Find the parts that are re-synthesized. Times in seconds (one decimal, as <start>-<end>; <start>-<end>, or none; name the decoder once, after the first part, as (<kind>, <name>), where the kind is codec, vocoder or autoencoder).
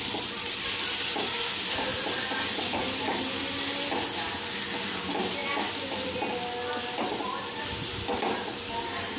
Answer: 1.9-4.0 (vocoder, BigVGAN v2)